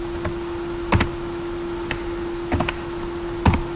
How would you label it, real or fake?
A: real